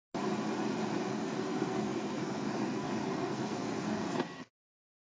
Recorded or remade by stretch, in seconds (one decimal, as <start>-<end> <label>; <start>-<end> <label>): 0.0-1.1 recorded; 1.1-5.0 remade

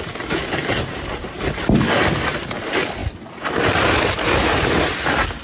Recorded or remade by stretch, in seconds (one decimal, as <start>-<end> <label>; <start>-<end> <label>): 0.0-5.4 recorded

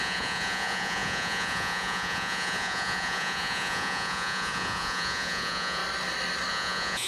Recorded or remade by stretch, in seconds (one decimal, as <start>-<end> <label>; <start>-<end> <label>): 0.0-5.8 remade; 5.8-6.5 recorded; 6.5-7.1 remade

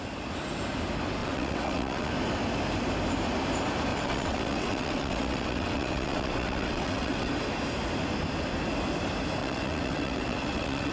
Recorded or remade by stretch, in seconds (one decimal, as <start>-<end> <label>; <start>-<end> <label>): 0.0-1.2 recorded; 1.2-2.1 remade; 2.1-3.9 recorded; 3.9-7.3 remade; 7.3-9.4 recorded; 9.4-10.9 remade

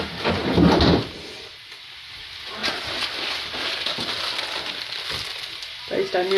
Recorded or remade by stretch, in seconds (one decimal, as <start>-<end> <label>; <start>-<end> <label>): 0.0-6.4 recorded

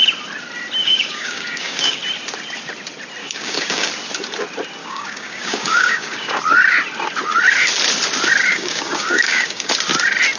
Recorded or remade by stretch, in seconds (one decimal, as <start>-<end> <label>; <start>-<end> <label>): 0.0-0.8 recorded; 0.8-2.0 remade; 2.0-3.2 recorded; 3.2-3.9 remade; 3.9-4.8 recorded; 4.8-6.4 remade; 6.4-8.5 recorded; 8.5-9.7 remade; 9.7-10.4 recorded

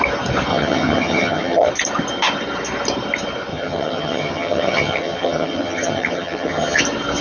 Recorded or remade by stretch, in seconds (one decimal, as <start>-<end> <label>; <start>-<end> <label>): 0.0-0.5 recorded; 0.5-1.7 remade; 1.7-3.5 recorded; 3.5-6.8 remade; 6.8-7.2 recorded